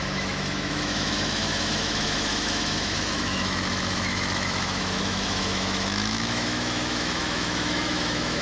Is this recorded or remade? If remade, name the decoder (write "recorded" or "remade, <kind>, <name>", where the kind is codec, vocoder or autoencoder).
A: remade, autoencoder, DAC-VAE